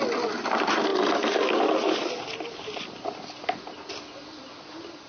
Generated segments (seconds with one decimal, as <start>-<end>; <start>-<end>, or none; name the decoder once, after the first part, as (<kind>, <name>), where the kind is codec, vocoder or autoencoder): none

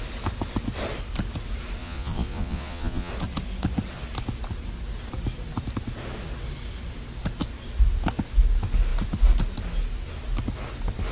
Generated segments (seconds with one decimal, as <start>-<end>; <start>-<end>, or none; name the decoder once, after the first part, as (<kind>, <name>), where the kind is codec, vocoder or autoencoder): 1.8-3.1 (vocoder, Vocos)

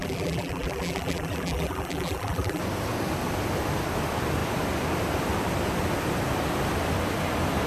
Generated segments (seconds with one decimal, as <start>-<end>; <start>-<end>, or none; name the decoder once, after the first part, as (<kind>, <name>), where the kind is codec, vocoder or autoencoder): 0.0-2.6 (vocoder, BigVGAN v2)